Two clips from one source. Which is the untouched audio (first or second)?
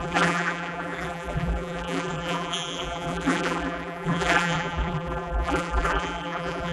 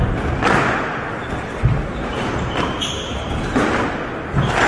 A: second